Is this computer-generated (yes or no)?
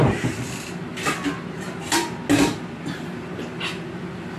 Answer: no